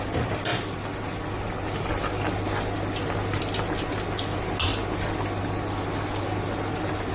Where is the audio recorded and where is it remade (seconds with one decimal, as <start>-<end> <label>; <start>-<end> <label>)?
0.0-7.1 recorded